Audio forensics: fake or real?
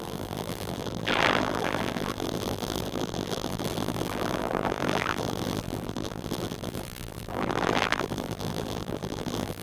fake